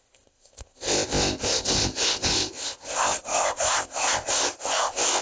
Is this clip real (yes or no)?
no